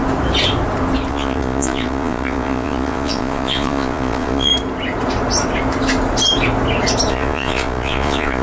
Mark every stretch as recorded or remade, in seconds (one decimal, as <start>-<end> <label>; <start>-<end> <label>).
0.0-1.1 recorded; 1.1-4.5 remade; 4.5-7.1 recorded; 7.1-8.4 remade